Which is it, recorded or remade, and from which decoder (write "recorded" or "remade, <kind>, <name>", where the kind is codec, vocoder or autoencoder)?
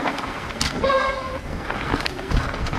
remade, codec, SNAC